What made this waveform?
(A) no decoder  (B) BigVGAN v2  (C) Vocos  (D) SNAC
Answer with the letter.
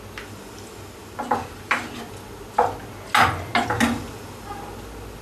A